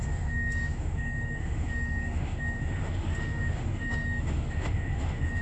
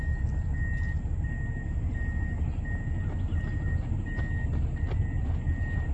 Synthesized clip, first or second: first